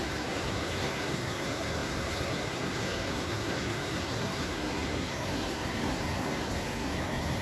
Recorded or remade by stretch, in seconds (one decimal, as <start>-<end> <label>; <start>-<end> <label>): 0.0-7.4 remade